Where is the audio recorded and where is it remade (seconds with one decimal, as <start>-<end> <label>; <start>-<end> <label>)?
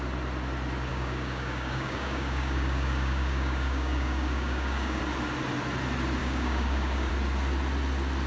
0.0-0.9 recorded; 0.9-5.0 remade; 5.0-6.2 recorded; 6.2-7.1 remade; 7.1-8.3 recorded